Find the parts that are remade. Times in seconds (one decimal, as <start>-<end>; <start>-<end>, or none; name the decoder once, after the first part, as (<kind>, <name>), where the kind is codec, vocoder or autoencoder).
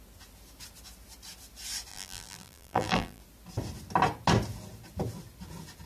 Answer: 1.9-3.2 (vocoder, BigVGAN v2)